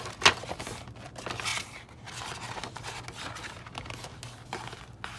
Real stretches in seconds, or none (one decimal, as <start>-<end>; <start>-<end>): 0.0-1.5; 2.4-5.2